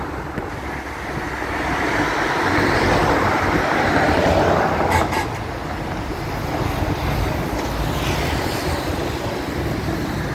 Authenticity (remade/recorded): recorded